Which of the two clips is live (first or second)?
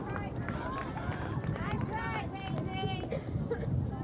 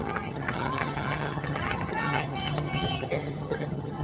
first